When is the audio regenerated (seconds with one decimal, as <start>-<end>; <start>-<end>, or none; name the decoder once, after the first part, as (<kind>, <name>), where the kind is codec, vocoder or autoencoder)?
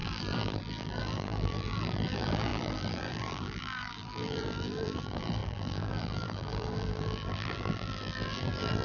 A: 0.0-8.8 (vocoder, BigVGAN v2)